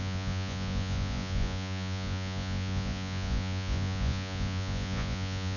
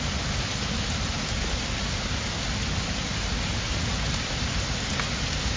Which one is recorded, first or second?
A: second